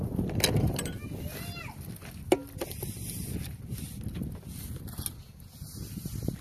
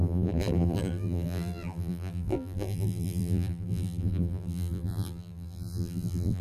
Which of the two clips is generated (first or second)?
second